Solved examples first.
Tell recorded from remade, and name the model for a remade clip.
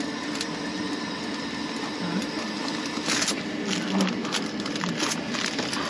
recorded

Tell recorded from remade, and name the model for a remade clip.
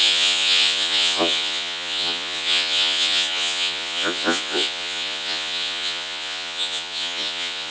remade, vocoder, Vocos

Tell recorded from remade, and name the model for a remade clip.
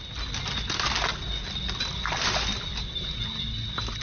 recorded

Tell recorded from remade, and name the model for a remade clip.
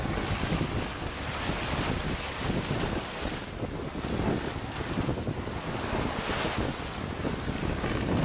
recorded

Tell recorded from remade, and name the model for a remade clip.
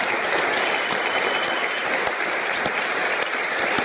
recorded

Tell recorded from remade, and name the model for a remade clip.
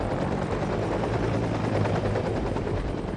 remade, vocoder, BigVGAN v2